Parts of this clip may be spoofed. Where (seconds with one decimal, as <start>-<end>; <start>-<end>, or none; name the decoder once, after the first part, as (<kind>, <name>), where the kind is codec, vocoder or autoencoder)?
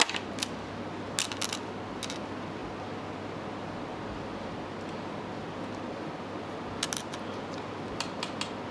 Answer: none